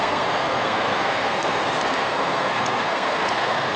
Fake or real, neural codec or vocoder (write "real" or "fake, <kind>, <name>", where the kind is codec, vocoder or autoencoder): fake, codec, SNAC